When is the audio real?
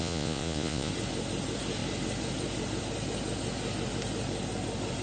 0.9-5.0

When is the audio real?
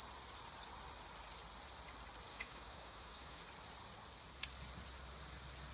0.0-2.3; 3.4-5.7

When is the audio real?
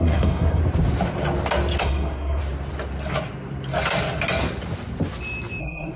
0.6-1.8; 2.4-5.6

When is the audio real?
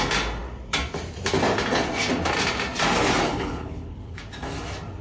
0.0-3.3; 4.2-5.0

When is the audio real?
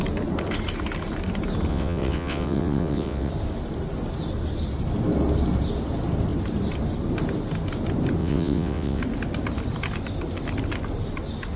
0.0-1.7; 3.3-8.2; 9.0-11.6